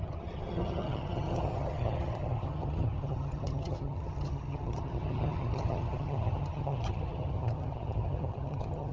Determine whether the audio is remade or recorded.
remade